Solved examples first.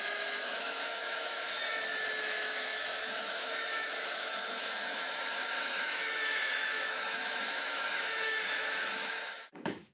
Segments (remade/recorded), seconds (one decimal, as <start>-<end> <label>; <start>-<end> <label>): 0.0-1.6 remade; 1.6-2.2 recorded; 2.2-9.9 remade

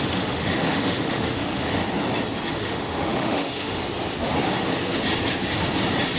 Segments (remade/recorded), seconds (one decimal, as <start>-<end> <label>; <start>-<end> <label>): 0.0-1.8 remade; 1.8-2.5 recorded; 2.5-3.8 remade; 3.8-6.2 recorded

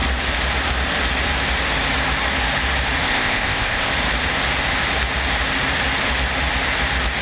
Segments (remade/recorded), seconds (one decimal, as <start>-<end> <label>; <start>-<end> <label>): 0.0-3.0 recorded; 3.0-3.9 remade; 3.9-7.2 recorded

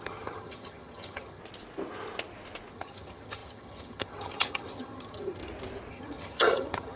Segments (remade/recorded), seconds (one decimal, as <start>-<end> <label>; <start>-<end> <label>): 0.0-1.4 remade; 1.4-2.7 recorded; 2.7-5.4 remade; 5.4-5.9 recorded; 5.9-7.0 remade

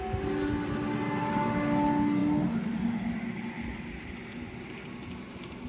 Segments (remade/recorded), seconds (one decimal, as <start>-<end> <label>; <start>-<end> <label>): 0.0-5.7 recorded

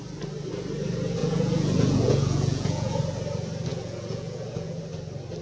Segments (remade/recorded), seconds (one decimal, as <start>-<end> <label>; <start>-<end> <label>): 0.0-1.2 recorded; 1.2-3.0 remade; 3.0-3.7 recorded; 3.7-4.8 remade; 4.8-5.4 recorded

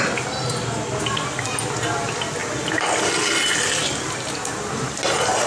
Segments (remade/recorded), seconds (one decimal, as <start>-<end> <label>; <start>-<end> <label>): 0.0-5.5 recorded

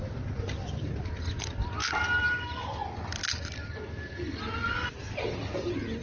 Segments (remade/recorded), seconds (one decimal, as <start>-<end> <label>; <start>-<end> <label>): 0.0-6.0 recorded